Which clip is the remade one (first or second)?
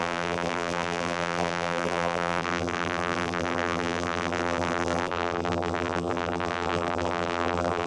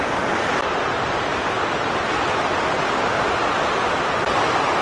first